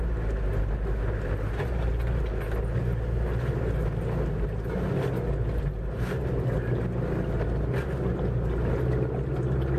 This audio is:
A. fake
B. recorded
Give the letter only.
B